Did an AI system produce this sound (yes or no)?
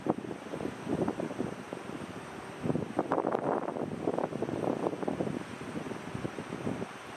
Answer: no